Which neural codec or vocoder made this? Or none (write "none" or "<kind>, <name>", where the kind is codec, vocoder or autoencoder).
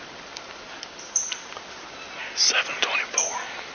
none